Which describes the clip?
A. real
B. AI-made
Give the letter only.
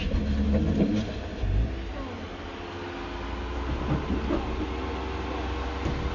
A